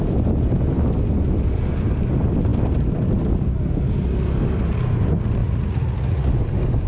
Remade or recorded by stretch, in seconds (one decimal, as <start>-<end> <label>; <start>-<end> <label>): 0.0-5.4 recorded; 5.4-6.3 remade; 6.3-6.9 recorded